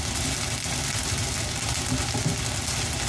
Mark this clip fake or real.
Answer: real